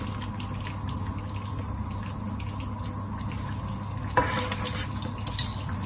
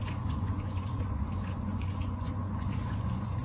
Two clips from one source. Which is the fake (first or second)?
second